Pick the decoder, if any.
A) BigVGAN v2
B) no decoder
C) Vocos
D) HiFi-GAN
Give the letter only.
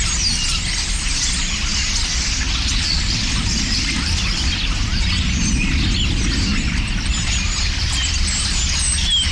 B